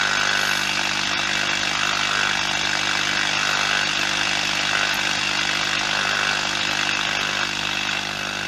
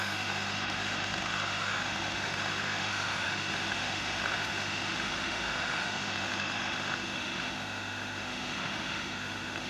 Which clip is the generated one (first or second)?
second